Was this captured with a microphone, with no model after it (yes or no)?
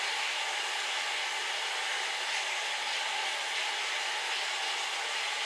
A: yes